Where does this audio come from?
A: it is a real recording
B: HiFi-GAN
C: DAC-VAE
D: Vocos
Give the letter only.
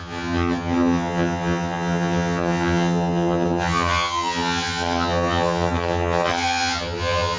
B